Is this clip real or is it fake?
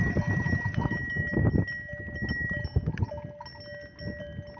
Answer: real